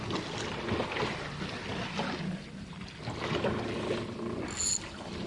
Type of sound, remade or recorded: recorded